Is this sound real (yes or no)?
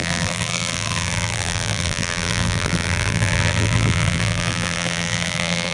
no